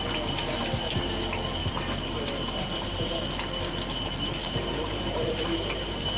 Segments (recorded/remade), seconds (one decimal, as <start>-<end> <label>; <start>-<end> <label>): 0.0-1.6 recorded; 1.6-3.2 remade; 3.2-4.4 recorded; 4.4-5.7 remade; 5.7-6.2 recorded